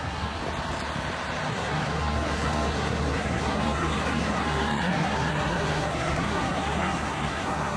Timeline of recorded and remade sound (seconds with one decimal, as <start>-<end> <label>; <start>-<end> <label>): 0.0-0.4 remade; 0.4-1.5 recorded; 1.5-7.8 remade